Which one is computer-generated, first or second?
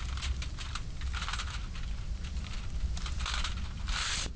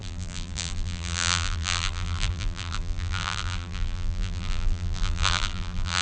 second